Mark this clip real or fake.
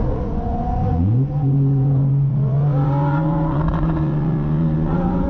fake